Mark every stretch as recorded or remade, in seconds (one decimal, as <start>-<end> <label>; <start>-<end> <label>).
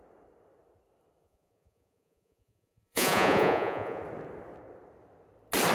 0.0-1.2 recorded; 1.2-4.0 remade; 4.0-5.7 recorded